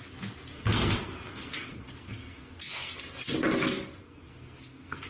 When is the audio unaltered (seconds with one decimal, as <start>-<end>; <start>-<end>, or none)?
0.0-0.5; 3.0-4.0